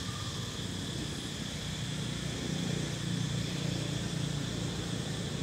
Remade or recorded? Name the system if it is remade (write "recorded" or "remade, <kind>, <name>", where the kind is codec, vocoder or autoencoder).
recorded